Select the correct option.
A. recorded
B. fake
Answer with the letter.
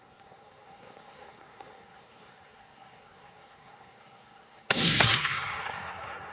B